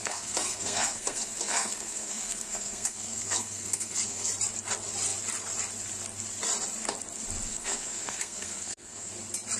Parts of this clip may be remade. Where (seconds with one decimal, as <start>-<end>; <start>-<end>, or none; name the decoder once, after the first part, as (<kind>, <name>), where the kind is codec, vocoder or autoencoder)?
0.0-4.3 (codec, SNAC); 7.5-9.1